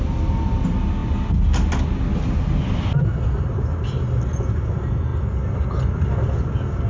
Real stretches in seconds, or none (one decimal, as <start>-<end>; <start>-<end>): 0.0-6.9